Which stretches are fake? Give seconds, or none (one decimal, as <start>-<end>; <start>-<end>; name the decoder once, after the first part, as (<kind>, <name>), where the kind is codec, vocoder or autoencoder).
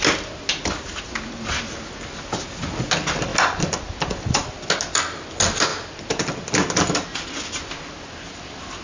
none